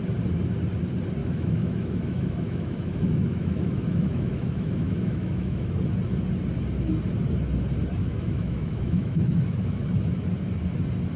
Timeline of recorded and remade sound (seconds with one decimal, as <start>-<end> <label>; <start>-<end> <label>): 0.0-1.2 recorded; 1.2-5.7 remade; 5.7-8.0 recorded; 8.0-9.8 remade; 9.8-11.2 recorded